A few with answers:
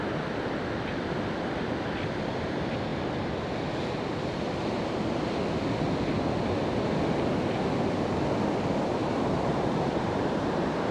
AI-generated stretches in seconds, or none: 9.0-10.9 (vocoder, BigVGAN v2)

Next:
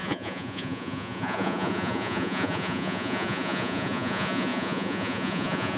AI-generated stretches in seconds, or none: 0.0-5.8 (vocoder, Vocos)

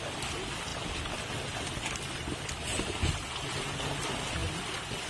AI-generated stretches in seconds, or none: none